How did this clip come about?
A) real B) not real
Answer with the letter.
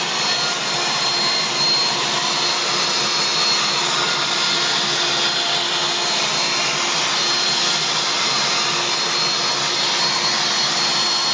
A